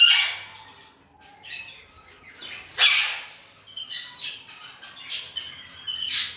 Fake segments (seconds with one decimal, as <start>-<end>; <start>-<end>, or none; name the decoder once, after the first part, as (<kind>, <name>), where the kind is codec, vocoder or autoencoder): none

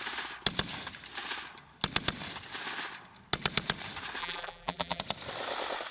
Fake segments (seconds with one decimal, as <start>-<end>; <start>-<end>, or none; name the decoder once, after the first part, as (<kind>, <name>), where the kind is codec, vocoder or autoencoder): 4.2-5.0 (vocoder, BigVGAN v2)

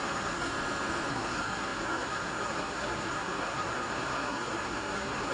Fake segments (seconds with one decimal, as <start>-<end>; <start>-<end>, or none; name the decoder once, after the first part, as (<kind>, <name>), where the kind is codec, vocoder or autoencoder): 0.0-0.5 (codec, SNAC); 1.1-5.3

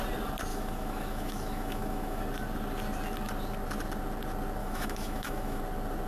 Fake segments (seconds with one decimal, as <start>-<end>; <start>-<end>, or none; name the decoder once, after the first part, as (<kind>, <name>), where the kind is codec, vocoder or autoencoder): 0.5-2.2 (autoencoder, DAC-VAE); 4.6-5.6

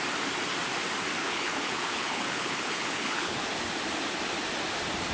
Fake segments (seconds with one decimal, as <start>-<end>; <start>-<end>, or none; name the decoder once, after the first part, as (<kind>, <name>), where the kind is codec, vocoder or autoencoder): 1.2-3.5 (codec, HILCodec)